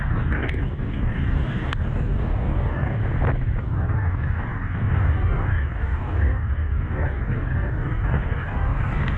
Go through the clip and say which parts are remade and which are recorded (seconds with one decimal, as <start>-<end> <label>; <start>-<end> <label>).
0.0-3.0 remade; 3.0-3.6 recorded; 3.6-9.2 remade